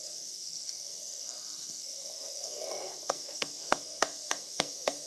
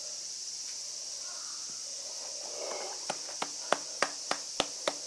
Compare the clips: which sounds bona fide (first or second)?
second